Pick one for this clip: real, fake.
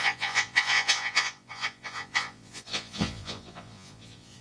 fake